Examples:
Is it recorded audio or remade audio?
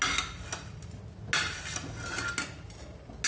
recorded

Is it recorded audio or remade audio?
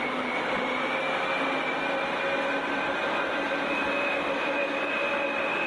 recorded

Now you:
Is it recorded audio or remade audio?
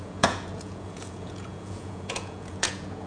remade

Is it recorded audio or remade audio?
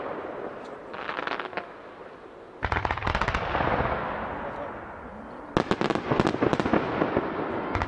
recorded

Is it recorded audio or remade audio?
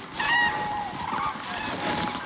recorded